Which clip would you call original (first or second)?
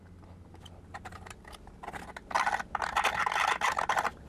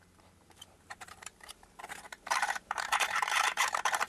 first